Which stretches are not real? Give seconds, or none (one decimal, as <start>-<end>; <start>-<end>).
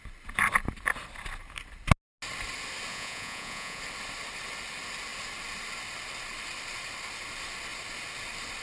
2.9-3.8